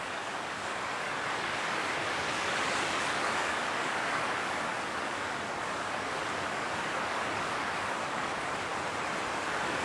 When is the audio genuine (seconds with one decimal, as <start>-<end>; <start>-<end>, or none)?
8.7-9.3